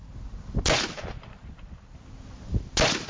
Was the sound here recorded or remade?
recorded